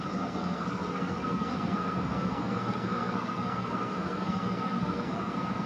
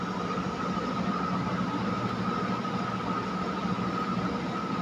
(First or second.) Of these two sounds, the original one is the second